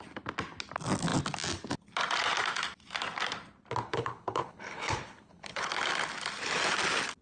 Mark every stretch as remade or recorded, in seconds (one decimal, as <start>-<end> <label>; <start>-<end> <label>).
0.0-3.9 recorded; 3.9-5.7 remade; 5.7-7.2 recorded